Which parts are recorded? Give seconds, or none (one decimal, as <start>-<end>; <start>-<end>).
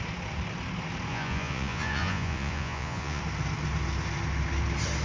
0.0-1.1; 3.2-5.0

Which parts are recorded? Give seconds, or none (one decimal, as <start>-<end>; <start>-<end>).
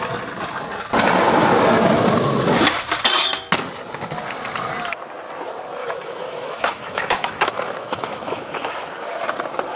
0.0-5.8; 8.5-9.8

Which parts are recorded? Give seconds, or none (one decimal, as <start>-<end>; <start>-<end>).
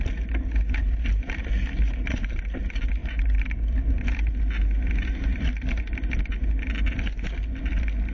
0.0-8.1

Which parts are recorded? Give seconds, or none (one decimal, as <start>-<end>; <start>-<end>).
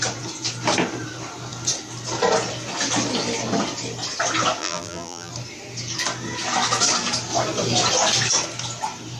0.0-4.6; 5.3-9.2